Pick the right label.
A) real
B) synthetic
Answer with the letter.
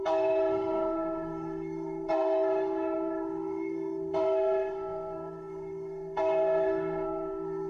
B